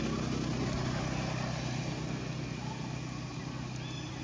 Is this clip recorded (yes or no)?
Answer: yes